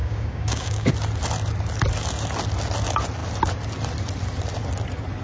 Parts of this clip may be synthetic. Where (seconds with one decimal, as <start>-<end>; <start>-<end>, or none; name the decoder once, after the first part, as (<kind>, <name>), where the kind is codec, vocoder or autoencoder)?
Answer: 0.0-0.9 (codec, DAC)